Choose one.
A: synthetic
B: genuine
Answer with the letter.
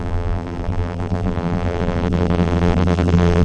A